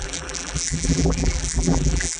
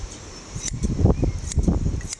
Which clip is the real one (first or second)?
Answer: second